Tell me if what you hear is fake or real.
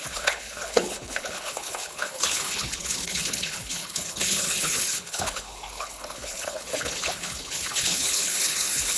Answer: fake